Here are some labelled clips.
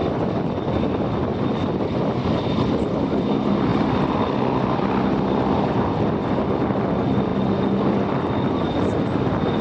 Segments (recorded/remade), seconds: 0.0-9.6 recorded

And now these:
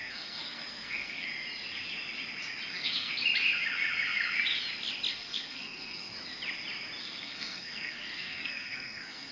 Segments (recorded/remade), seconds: 0.0-1.3 remade; 1.3-2.7 recorded; 2.7-3.1 remade; 3.1-5.1 recorded; 5.1-6.1 remade; 6.1-7.0 recorded; 7.0-9.3 remade

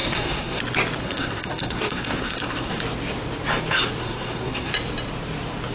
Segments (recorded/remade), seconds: 0.0-0.6 remade; 0.6-1.0 recorded; 1.0-2.8 remade; 2.8-4.0 recorded; 4.0-4.7 remade; 4.7-5.7 recorded

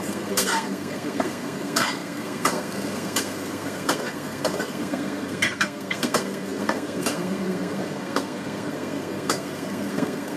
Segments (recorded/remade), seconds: 0.0-10.4 remade

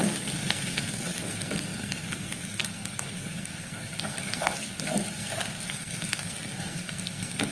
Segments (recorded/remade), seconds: 0.0-7.5 remade

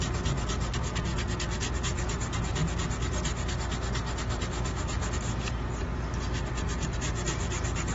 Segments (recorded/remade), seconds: 0.0-7.9 recorded

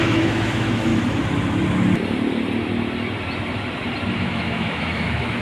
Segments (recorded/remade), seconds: 0.0-0.9 remade; 0.9-4.1 recorded; 4.1-5.4 remade

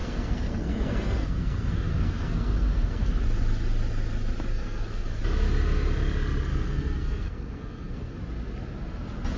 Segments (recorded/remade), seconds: 0.0-3.1 remade; 3.1-4.5 recorded; 4.5-5.2 remade; 5.2-6.5 recorded; 6.5-8.2 remade; 8.2-9.4 recorded